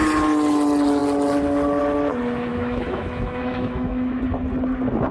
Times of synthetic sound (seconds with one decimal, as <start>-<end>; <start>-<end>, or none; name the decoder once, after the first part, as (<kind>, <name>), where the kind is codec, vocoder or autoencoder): 2.5-4.2 (autoencoder, DAC-VAE)